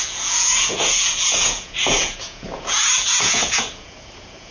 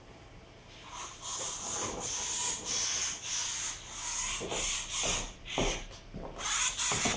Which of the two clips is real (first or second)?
second